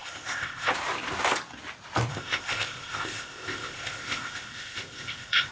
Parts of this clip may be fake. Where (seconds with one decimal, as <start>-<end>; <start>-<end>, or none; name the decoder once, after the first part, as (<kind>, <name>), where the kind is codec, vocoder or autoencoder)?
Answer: 0.0-0.7 (codec, ZipCodec); 2.1-5.5